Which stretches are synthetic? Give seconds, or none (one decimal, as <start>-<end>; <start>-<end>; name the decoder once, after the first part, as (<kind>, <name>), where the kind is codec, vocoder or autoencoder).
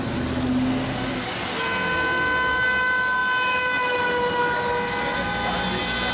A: none